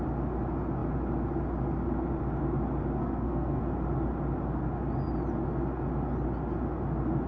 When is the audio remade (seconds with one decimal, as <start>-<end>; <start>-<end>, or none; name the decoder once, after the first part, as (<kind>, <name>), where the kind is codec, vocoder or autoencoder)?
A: 3.0-3.6 (codec, SNAC)